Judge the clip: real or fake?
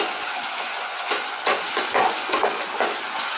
fake